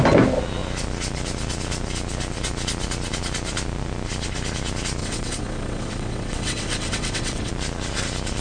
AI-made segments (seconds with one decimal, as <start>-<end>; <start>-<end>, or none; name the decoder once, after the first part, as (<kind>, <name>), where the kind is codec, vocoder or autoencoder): 5.0-7.5 (vocoder, WaveNeXt)